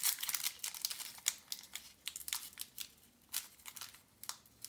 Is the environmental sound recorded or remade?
recorded